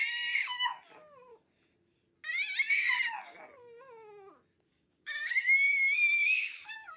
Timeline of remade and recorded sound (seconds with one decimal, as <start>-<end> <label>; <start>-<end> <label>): 0.0-4.7 recorded; 4.7-7.0 remade